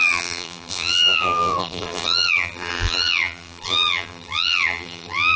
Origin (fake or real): fake